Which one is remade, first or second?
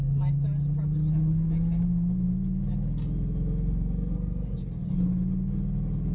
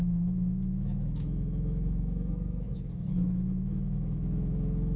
second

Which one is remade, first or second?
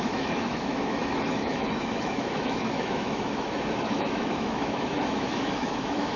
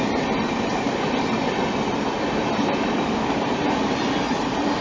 first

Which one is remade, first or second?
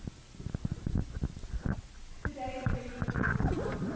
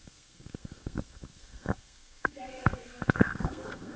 second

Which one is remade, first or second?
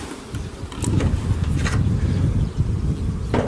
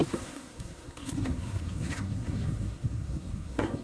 second